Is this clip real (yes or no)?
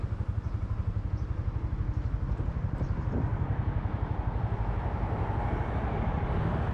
yes